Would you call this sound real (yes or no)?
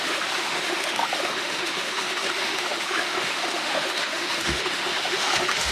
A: no